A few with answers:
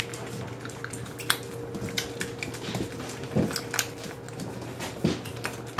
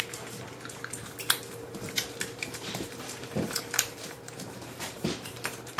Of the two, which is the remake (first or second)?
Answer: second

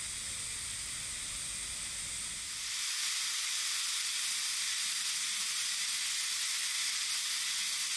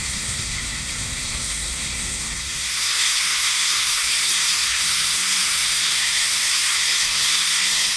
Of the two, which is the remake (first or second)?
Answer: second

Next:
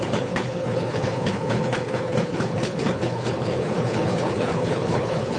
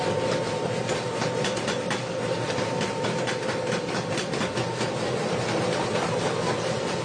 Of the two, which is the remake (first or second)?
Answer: first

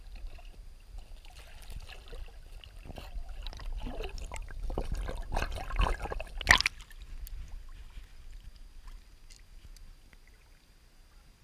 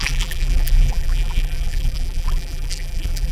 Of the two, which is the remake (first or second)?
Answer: second